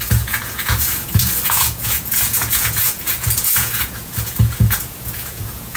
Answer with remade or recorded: remade